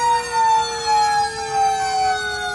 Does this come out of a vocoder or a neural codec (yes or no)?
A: no